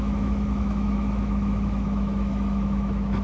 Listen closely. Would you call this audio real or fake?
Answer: fake